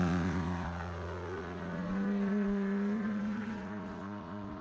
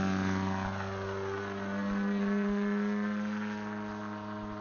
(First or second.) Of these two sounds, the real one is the second